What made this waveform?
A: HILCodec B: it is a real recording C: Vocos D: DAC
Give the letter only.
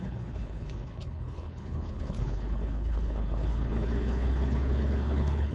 A